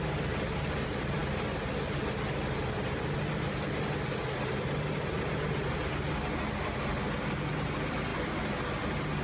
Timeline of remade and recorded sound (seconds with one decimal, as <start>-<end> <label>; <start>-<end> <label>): 0.0-9.2 recorded